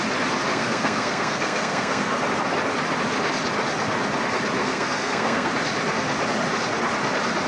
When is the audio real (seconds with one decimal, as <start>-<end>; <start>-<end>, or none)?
0.0-0.5; 2.2-4.6; 5.5-7.5